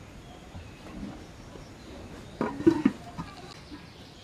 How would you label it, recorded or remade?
recorded